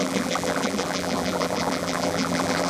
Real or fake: fake